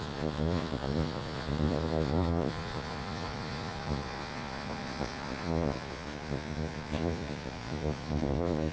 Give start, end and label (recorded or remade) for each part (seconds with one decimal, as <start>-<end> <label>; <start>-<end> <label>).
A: 0.0-8.7 remade